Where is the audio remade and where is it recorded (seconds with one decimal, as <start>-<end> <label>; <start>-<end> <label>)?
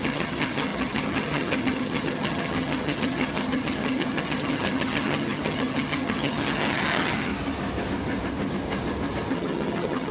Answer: 0.0-7.3 remade; 7.3-9.3 recorded; 9.3-10.1 remade